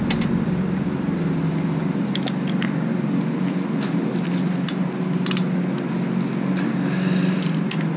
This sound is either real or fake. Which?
real